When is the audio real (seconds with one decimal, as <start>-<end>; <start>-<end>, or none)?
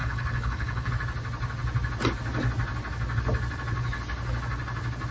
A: 0.9-5.1